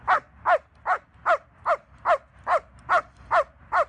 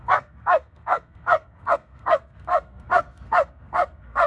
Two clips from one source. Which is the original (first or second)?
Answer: first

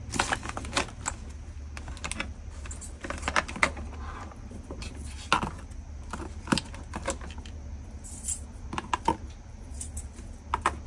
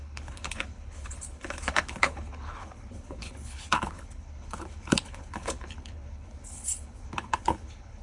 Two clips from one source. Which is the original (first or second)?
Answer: first